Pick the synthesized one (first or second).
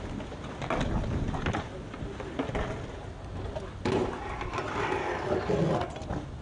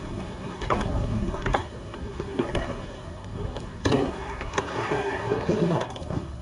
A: second